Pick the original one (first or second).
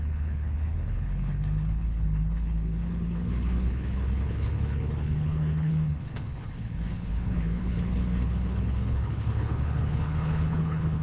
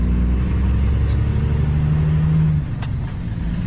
second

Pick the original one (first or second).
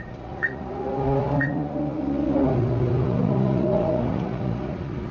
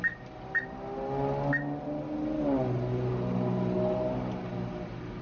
second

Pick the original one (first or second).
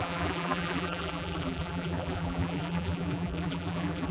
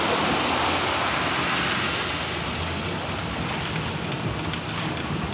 second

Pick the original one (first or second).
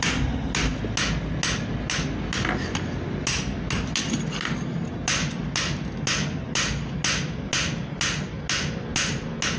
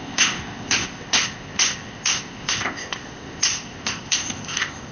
first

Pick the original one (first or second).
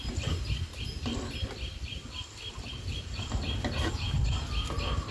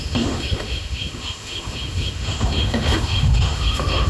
first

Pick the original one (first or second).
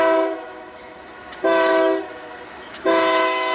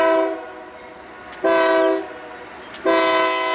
second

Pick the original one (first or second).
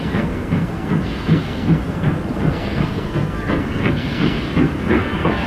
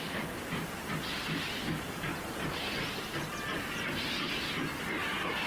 second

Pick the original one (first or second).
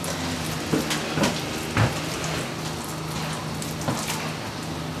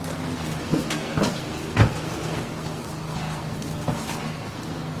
first